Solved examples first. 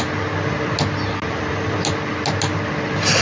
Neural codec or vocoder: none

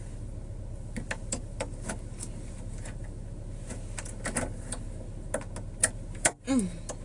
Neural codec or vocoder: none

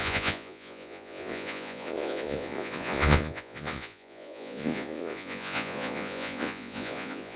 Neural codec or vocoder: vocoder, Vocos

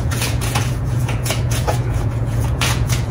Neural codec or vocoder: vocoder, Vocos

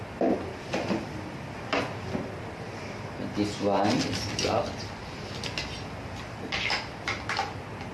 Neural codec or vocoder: none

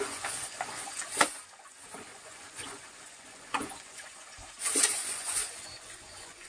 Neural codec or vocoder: vocoder, Vocos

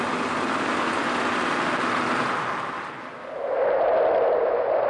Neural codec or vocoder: none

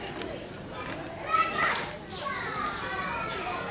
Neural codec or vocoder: none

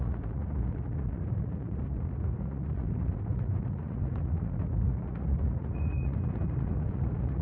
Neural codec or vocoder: vocoder, Vocos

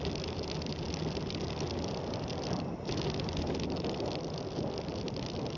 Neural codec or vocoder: none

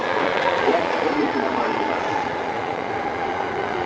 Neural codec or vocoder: vocoder, Vocos